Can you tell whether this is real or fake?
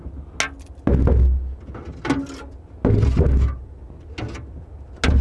real